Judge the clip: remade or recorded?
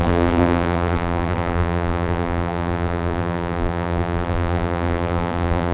remade